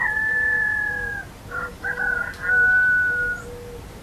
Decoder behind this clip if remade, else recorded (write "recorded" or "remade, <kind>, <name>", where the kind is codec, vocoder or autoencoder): recorded